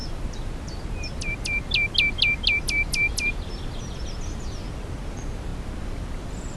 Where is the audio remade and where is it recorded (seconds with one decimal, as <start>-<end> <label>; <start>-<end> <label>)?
0.0-6.6 recorded